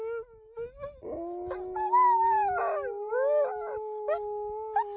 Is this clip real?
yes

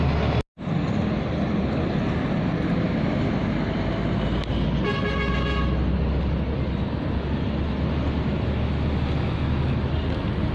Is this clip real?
yes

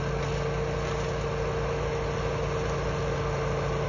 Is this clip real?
yes